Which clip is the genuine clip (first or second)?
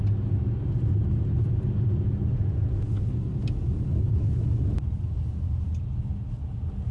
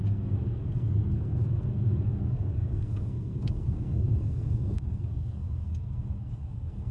first